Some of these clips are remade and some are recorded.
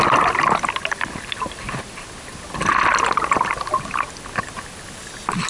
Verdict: recorded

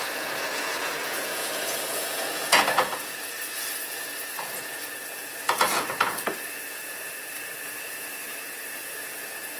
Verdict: remade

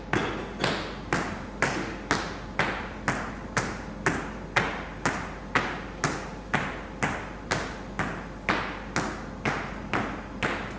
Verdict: recorded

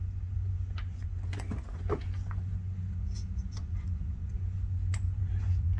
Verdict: remade